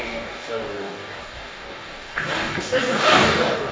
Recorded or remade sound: remade